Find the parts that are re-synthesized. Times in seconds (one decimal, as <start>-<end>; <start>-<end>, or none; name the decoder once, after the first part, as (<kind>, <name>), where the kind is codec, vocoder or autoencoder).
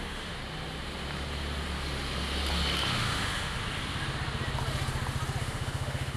0.0-0.4 (autoencoder, DAC-VAE); 2.9-3.6; 5.4-6.2